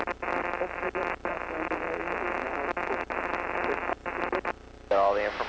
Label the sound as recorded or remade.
recorded